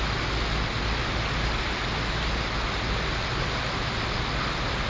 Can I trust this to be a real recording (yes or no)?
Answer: yes